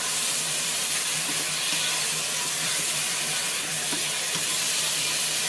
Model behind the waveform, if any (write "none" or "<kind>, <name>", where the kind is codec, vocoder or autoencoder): vocoder, BigVGAN v2